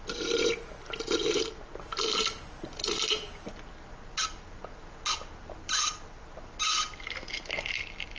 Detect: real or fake real